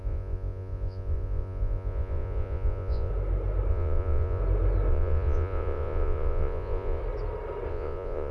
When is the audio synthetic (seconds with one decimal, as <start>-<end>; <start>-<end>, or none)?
0.0-3.1; 3.7-4.4; 4.9-7.0; 7.7-8.3